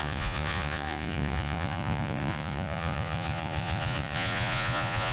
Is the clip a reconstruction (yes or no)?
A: yes